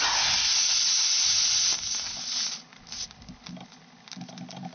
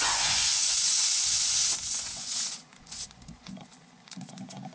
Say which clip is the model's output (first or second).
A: second